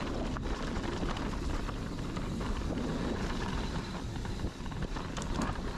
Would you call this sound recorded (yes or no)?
yes